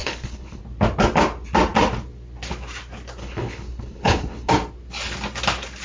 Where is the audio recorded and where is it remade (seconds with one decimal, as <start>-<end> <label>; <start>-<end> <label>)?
0.0-0.6 remade; 0.6-3.2 recorded; 3.2-4.5 remade; 4.5-5.8 recorded